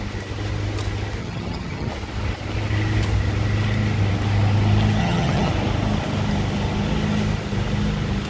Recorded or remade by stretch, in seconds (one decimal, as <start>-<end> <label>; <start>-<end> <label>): 0.0-1.2 recorded; 1.2-1.9 remade; 1.9-5.0 recorded; 5.0-5.5 remade; 5.5-8.3 recorded